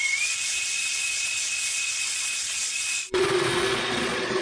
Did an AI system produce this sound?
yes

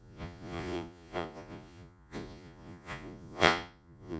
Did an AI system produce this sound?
yes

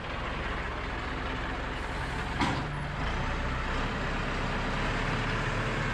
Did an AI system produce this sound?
no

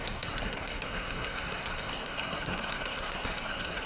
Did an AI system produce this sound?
yes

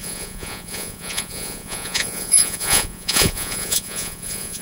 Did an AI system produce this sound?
yes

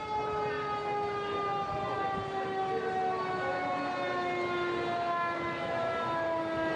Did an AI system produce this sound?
no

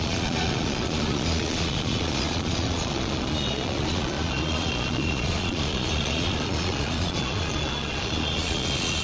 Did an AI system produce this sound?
yes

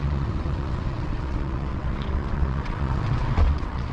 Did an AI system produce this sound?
yes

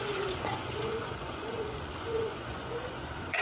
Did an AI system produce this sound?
yes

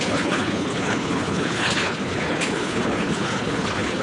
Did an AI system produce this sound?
yes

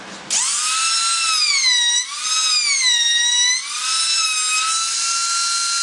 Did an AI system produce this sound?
no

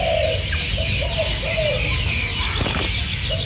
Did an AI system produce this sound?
no